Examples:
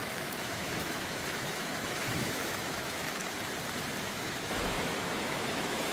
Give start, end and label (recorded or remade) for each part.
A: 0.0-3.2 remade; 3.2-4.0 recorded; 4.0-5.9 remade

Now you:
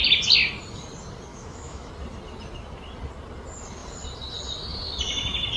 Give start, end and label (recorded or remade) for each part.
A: 0.0-1.3 recorded; 1.3-1.9 remade; 1.9-5.6 recorded

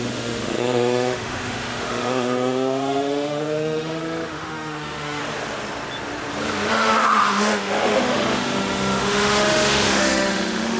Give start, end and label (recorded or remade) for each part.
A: 0.0-5.2 remade; 5.2-6.7 recorded; 6.7-10.8 remade

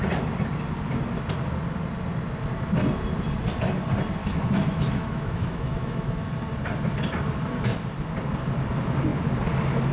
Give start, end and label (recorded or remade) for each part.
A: 0.0-4.2 recorded; 4.2-6.3 remade; 6.3-9.9 recorded